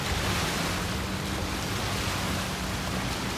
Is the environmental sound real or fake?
real